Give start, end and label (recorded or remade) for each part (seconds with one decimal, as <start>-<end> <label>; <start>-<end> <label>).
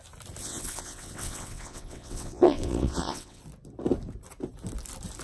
0.0-0.4 recorded; 0.4-3.4 remade; 3.4-5.2 recorded